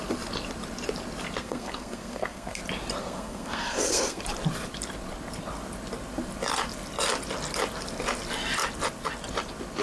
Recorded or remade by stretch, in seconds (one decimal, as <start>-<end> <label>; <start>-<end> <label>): 0.0-1.4 recorded; 1.4-2.6 remade; 2.6-3.0 recorded; 3.0-4.2 remade; 4.2-9.8 recorded